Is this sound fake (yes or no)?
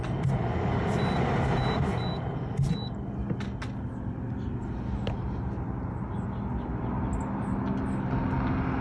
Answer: no